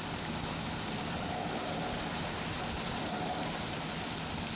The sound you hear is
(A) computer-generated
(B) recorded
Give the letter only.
B